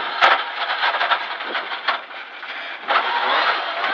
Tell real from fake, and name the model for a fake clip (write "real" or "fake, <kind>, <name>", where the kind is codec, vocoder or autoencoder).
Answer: real